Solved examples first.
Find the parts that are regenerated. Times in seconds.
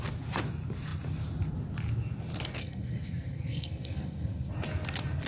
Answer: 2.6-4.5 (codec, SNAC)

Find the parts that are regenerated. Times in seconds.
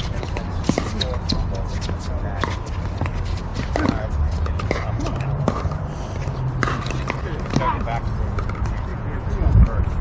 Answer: 8.9-10.0 (vocoder, Vocos)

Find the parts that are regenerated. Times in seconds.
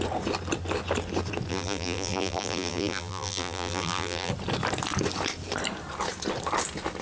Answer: 1.5-4.3 (vocoder, BigVGAN v2)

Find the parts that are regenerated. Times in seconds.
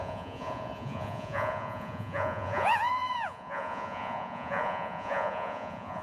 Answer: 0.0-6.0 (vocoder, Vocos)